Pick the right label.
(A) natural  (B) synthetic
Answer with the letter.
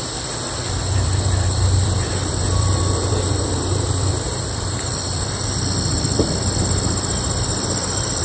B